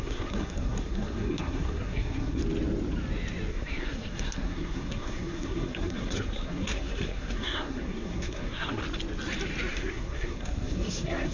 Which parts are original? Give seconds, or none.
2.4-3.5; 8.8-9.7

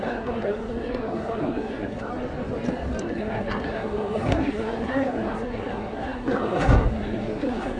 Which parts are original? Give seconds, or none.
2.1-3.0

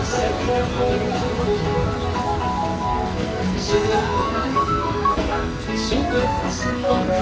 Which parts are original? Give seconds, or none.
0.0-2.7

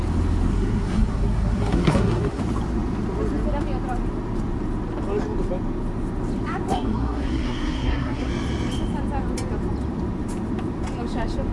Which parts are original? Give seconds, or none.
0.0-0.5; 2.4-6.7; 8.3-11.5

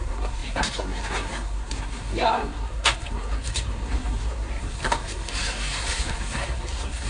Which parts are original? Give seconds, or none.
none

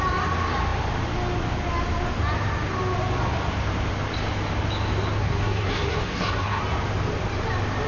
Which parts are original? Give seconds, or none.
0.0-5.2; 6.6-7.9